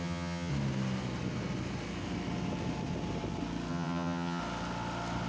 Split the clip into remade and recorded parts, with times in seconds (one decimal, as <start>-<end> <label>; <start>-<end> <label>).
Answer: 0.0-0.5 remade; 0.5-3.7 recorded; 3.7-4.4 remade; 4.4-5.3 recorded